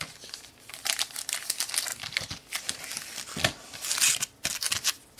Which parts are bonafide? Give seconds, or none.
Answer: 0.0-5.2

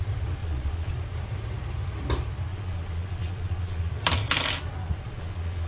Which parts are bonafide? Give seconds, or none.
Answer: 0.0-0.4; 0.9-2.5; 3.9-4.8

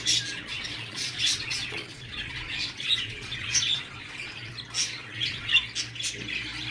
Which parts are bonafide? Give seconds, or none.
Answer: 0.0-0.5; 4.5-5.0; 5.5-6.7

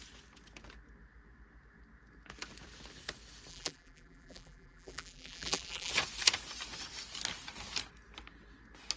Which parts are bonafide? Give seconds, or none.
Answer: 0.0-3.5; 5.9-9.0

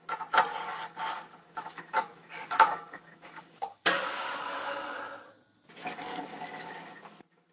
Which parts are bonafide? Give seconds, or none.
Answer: 0.0-0.5; 5.0-5.8; 6.7-7.5

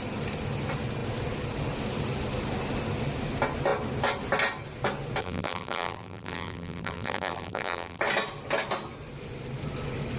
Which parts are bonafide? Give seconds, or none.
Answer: 0.0-5.2; 8.0-10.2